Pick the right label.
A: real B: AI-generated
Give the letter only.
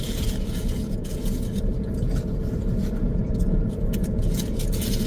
B